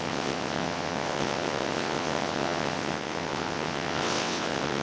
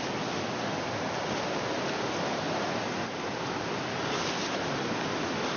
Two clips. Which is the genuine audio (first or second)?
second